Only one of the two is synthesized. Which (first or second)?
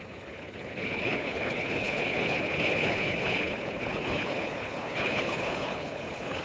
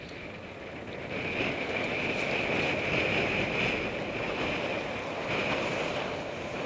first